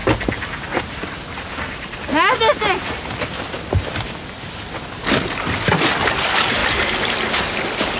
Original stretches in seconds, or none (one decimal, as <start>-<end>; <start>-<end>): 0.0-8.0